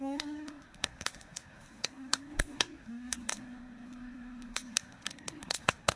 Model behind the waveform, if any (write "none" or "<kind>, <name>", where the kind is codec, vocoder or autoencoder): codec, SNAC